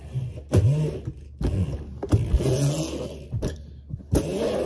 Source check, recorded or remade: recorded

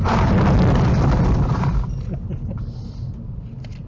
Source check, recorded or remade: recorded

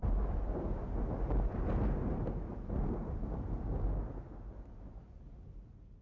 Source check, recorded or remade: recorded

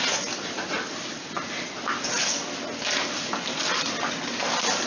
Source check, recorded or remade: recorded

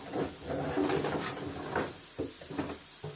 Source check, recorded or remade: recorded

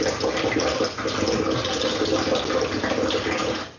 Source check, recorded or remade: recorded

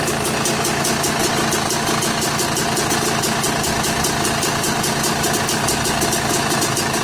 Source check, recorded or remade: recorded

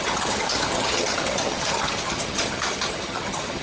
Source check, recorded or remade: remade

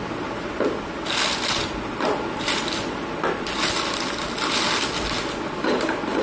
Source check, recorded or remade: recorded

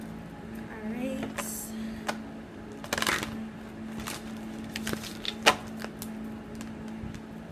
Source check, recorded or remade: recorded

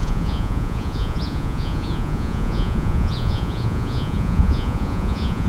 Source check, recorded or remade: remade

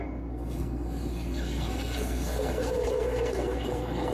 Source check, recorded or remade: remade